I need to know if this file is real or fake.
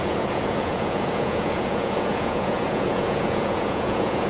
fake